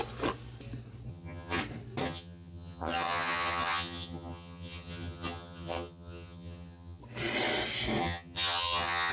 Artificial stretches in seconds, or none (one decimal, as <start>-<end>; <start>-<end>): 1.1-1.6; 2.0-7.0; 8.0-9.1